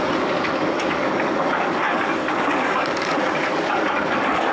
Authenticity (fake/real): fake